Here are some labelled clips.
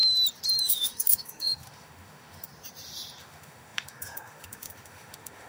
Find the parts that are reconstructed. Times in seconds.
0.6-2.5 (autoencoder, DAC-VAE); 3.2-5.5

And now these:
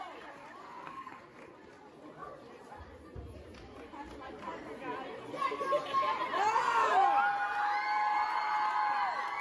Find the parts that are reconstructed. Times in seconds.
0.6-1.2 (codec, SNAC)

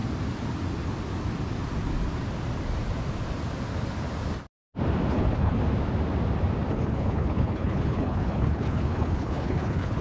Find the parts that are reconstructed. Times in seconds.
5.1-5.6 (codec, HILCodec); 6.7-10.0

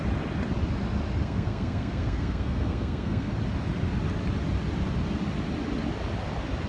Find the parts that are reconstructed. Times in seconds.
1.2-3.3 (codec, SNAC)

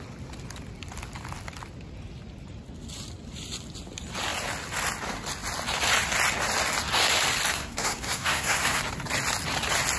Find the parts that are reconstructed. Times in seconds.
7.5-8.8 (codec, SNAC)

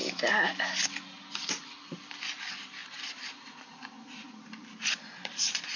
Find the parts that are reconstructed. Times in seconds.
none

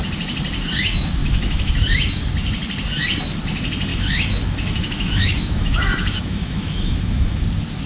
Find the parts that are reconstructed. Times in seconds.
1.2-2.2 (autoencoder, DAC-VAE); 3.9-7.4

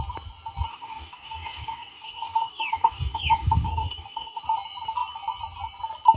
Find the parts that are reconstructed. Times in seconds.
0.7-4.4 (codec, DAC)